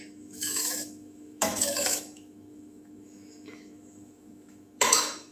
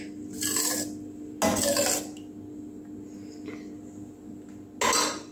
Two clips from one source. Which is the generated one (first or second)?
first